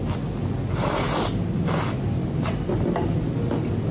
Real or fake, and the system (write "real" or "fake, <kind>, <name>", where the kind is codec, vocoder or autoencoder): real